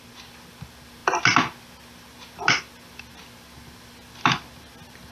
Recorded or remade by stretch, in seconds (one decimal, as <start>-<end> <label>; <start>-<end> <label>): 0.0-5.1 recorded